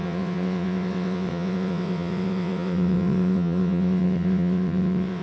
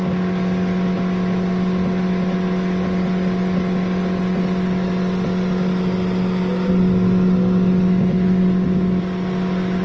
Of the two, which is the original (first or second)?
second